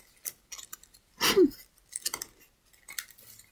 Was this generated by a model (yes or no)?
no